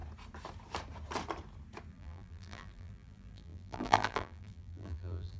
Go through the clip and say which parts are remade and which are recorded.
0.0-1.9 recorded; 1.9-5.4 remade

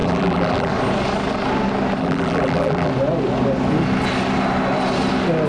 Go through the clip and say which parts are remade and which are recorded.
0.0-0.7 remade; 0.7-2.0 recorded; 2.0-2.9 remade; 2.9-5.5 recorded